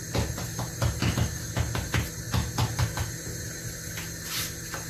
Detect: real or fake real